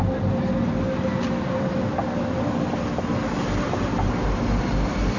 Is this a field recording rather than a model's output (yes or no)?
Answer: yes